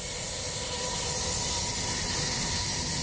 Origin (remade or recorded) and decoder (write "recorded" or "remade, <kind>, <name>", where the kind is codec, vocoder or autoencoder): recorded